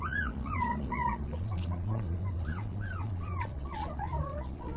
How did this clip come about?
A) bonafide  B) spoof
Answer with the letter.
B